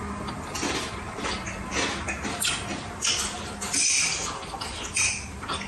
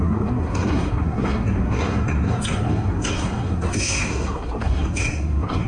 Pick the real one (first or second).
first